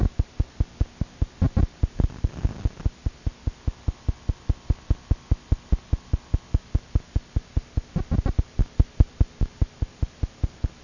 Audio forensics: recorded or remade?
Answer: recorded